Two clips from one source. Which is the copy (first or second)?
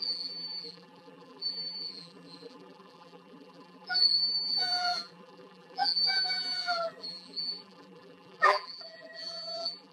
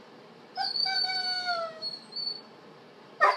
first